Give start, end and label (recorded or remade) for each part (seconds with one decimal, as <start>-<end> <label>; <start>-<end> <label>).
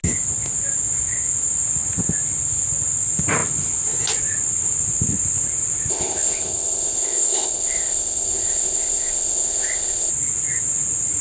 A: 0.0-5.9 recorded; 5.9-10.1 remade; 10.1-11.2 recorded